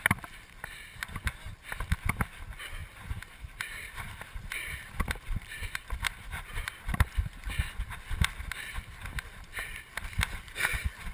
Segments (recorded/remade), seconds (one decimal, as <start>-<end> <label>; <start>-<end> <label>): 0.0-2.8 recorded; 2.8-7.4 remade; 7.4-11.1 recorded